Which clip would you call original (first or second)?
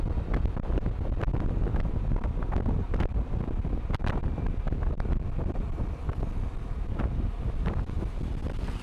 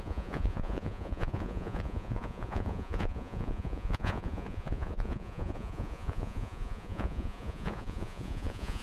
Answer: first